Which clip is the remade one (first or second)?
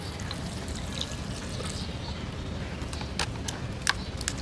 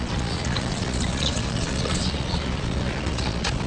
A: second